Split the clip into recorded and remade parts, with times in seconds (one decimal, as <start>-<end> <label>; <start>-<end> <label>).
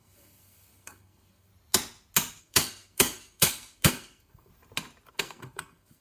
0.0-1.5 remade; 1.5-2.4 recorded; 2.4-4.5 remade; 4.5-5.1 recorded; 5.1-6.0 remade